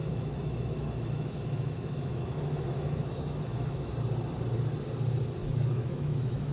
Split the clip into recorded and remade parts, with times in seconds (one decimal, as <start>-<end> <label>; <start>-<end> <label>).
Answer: 0.0-3.9 remade; 3.9-5.4 recorded; 5.4-6.5 remade